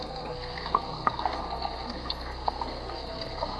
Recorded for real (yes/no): no